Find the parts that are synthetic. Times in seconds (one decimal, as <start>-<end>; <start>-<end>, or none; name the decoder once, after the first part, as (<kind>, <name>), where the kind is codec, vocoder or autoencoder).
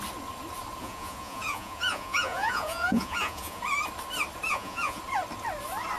0.8-3.6 (vocoder, Vocos); 4.5-5.0